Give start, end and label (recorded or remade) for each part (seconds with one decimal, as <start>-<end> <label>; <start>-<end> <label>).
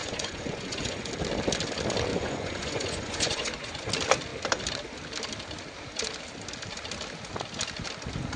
0.0-1.1 remade; 1.1-2.1 recorded; 2.1-3.9 remade; 3.9-8.4 recorded